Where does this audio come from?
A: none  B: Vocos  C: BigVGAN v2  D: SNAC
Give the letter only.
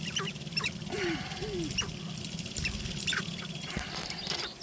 A